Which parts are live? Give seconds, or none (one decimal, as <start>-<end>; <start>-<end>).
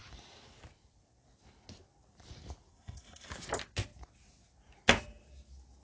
0.0-2.7; 3.3-5.8